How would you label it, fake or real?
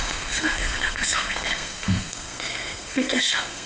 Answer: fake